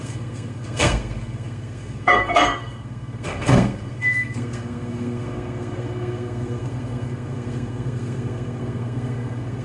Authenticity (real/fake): fake